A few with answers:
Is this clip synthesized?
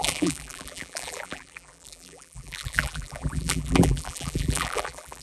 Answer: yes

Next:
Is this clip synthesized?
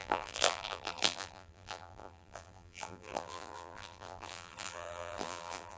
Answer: yes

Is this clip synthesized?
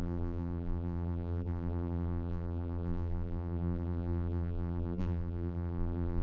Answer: yes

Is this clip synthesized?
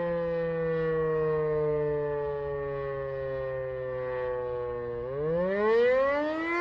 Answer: no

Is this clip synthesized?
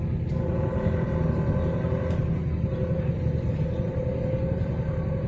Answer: no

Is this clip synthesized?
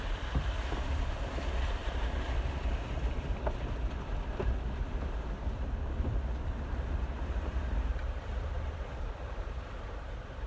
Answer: yes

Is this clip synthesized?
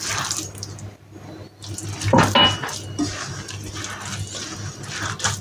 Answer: no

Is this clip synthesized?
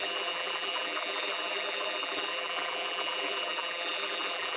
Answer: yes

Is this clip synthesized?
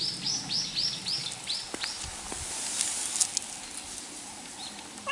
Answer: no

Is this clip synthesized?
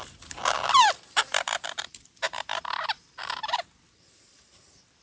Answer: yes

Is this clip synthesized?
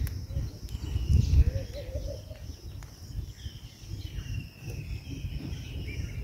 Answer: no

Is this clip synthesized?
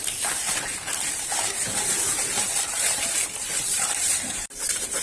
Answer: yes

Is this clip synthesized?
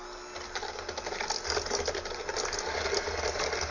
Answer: no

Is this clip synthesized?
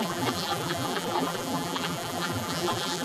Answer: yes